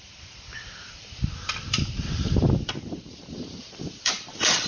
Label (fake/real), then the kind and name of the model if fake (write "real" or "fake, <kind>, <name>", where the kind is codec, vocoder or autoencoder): fake, vocoder, BigVGAN v2